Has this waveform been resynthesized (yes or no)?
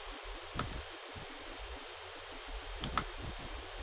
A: no